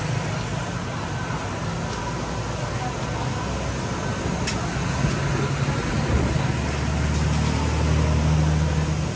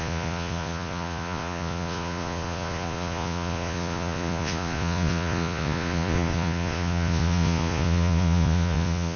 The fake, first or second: second